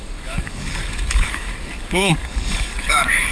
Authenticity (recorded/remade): remade